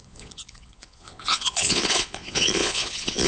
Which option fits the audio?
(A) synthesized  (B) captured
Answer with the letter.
A